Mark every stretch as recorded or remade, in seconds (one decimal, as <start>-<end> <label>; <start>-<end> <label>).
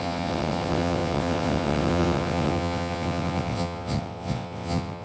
0.0-5.0 remade